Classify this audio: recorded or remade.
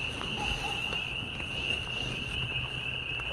recorded